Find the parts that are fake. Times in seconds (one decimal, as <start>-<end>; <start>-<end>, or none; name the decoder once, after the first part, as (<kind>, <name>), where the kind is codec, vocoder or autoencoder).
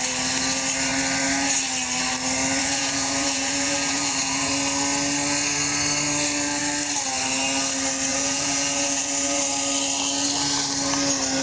2.6-4.5 (vocoder, Vocos); 8.1-9.4